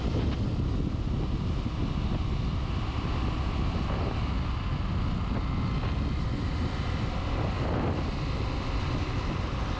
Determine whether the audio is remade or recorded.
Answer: recorded